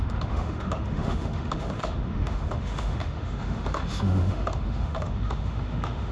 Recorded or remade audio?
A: remade